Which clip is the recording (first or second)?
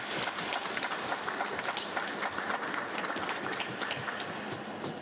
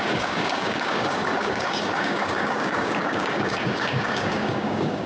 first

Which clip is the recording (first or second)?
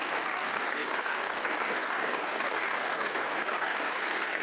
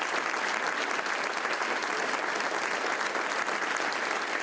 second